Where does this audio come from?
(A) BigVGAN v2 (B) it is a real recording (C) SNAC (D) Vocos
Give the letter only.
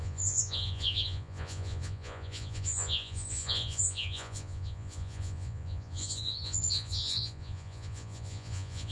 D